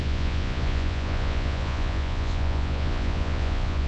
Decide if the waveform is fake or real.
fake